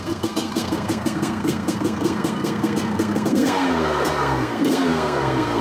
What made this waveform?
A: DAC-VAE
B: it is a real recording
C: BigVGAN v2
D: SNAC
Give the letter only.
D